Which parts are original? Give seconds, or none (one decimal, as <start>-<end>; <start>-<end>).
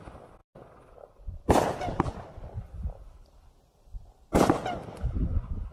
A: 0.0-0.4; 3.8-5.7